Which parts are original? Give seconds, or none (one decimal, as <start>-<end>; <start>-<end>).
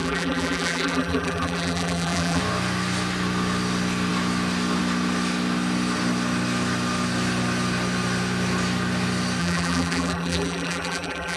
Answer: 2.4-9.4